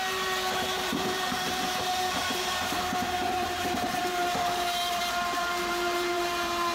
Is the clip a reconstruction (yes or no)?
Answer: yes